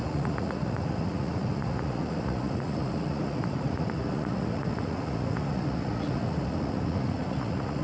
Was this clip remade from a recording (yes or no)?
yes